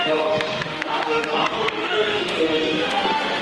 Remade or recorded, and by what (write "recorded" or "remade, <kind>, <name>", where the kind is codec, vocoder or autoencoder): remade, autoencoder, DAC-VAE